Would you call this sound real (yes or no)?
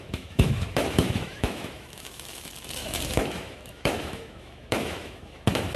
no